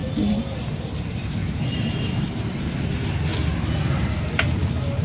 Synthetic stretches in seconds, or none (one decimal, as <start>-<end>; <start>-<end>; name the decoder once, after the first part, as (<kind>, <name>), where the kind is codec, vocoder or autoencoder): 0.0-0.6 (vocoder, BigVGAN v2); 1.4-2.7; 3.3-4.0